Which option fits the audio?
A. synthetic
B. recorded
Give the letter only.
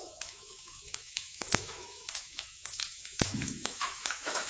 A